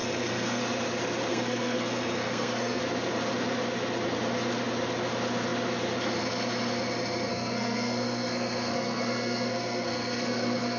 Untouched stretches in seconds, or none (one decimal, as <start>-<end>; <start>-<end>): 0.6-1.3; 2.8-7.3